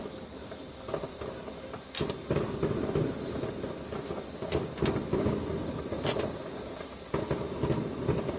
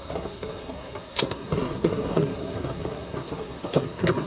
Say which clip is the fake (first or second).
second